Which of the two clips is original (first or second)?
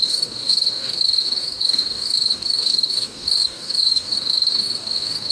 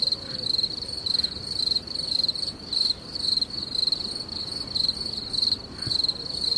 second